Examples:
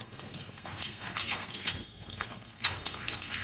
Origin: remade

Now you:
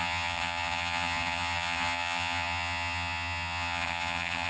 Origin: remade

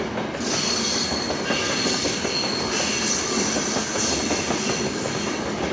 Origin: recorded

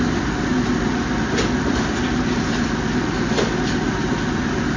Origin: recorded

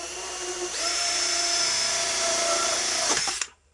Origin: remade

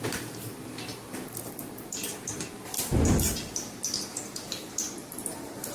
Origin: recorded